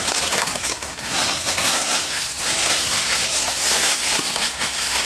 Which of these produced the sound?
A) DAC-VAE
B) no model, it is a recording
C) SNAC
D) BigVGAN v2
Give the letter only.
C